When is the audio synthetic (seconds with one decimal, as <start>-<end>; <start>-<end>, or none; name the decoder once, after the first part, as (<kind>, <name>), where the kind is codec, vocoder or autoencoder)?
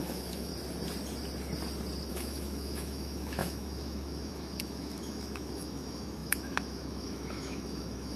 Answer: 0.0-0.5 (autoencoder, DAC-VAE); 2.1-8.2